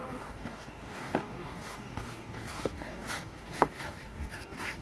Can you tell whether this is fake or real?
fake